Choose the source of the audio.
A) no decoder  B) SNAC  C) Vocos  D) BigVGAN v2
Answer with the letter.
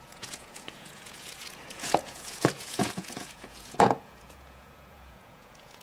C